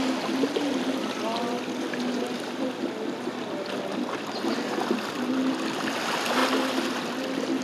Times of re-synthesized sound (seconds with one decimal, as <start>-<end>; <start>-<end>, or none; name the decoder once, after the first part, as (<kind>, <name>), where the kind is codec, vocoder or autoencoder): none